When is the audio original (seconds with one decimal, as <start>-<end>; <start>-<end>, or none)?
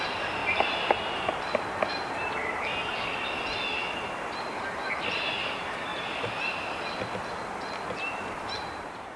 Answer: 2.7-5.1; 5.9-7.8